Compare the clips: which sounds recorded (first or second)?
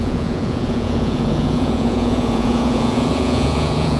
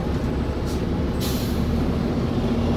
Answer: second